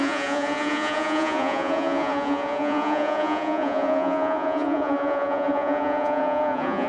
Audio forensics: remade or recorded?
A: remade